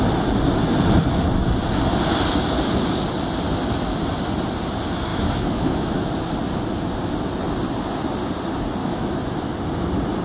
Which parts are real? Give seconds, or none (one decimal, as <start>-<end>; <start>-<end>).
0.0-5.1; 6.1-8.8; 9.5-10.2